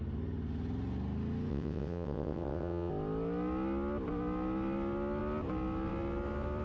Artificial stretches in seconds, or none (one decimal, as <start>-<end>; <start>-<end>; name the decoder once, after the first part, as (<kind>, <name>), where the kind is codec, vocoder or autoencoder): 1.5-2.9 (vocoder, WaveNeXt)